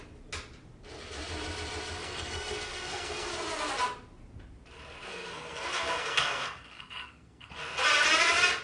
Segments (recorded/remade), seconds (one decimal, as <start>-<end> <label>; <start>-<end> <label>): 0.0-2.0 recorded; 2.0-3.3 remade; 3.3-5.1 recorded; 5.1-7.6 remade; 7.6-8.6 recorded